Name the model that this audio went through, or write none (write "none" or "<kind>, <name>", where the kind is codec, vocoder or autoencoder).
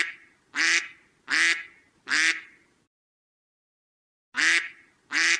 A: none